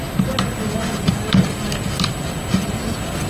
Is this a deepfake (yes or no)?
no